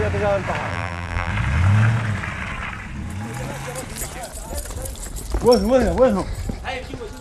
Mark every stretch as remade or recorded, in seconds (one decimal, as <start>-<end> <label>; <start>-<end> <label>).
0.0-0.7 recorded; 0.7-1.3 remade; 1.3-7.2 recorded